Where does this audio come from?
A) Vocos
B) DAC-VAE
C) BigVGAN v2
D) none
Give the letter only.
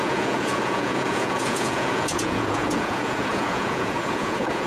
A